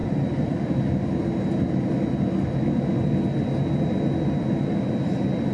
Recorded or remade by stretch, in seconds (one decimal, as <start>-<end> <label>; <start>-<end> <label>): 0.0-0.7 remade; 0.7-5.5 recorded